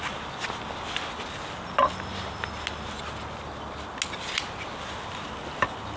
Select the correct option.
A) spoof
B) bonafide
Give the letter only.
B